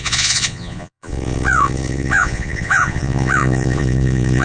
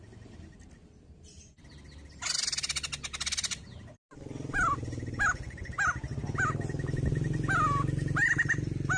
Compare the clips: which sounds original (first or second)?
second